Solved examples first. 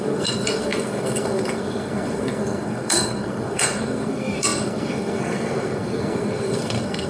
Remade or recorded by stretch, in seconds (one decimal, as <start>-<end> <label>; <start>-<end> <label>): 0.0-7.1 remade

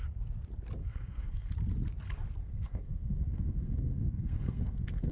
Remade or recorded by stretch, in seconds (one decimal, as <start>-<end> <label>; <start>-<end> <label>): 0.0-0.8 recorded; 0.8-1.5 remade; 1.5-2.4 recorded; 2.4-5.1 remade

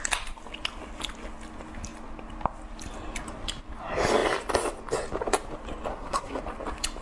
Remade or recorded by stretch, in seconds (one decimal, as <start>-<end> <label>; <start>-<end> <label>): 0.0-5.9 recorded; 5.9-6.4 remade; 6.4-7.0 recorded

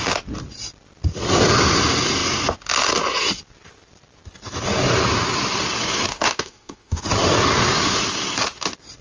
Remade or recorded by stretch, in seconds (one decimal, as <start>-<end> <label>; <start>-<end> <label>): 0.0-6.1 recorded; 6.1-7.0 remade; 7.0-9.0 recorded